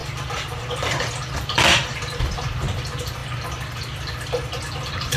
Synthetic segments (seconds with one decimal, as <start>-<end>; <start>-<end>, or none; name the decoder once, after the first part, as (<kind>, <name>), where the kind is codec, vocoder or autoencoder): 0.0-2.3 (vocoder, BigVGAN v2)

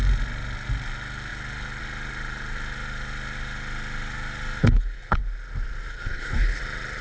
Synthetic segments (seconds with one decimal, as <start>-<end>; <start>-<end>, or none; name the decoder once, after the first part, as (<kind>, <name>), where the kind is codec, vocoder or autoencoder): 4.6-5.2 (codec, HILCodec); 5.9-6.6

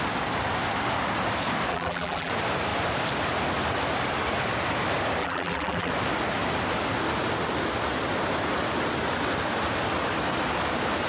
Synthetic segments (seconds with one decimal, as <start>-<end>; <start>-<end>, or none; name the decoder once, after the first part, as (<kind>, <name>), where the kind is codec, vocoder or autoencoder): 1.7-2.3 (vocoder, BigVGAN v2); 5.2-5.9

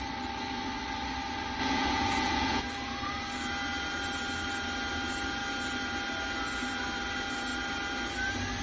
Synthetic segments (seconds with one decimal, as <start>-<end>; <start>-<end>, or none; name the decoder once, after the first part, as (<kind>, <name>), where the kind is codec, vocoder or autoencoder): 1.6-2.6 (vocoder, Vocos)

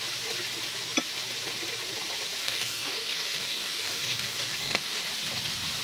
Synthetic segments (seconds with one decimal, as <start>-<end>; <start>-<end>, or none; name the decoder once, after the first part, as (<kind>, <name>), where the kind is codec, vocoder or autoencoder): 2.4-5.0 (codec, DAC)

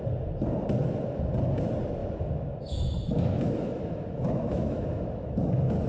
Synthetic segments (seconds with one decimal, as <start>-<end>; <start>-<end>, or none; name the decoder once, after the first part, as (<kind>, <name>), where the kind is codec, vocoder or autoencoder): 2.0-5.5 (autoencoder, DAC-VAE)

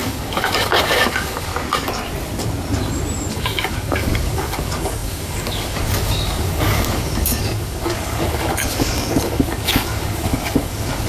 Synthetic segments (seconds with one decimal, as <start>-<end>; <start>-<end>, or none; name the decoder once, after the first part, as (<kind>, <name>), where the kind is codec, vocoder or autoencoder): 0.0-1.5 (codec, DAC); 3.3-11.1

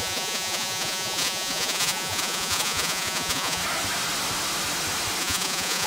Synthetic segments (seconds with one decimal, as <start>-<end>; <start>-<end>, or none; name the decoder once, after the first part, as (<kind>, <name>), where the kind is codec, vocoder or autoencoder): 0.0-3.6 (vocoder, Vocos); 5.2-5.9